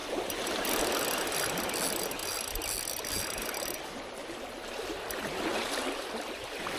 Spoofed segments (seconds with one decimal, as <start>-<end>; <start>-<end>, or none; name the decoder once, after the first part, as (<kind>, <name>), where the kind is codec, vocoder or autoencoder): none